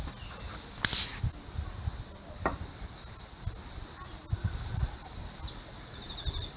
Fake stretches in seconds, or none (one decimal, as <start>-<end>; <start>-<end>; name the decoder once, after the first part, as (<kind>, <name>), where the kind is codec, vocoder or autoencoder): none